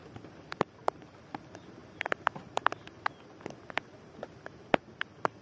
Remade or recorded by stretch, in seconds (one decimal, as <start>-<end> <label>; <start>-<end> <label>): 0.0-5.4 recorded